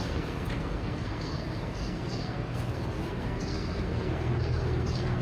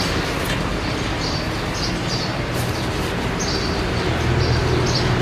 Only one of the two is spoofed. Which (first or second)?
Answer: first